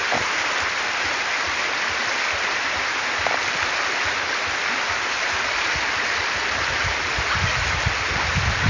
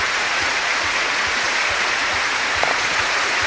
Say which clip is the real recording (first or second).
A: first